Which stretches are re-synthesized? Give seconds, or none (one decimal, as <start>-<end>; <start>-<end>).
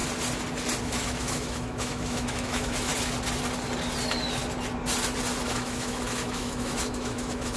0.8-2.9; 5.5-7.6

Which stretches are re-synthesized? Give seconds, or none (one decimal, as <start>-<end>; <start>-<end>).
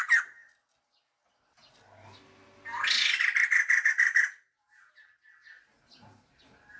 none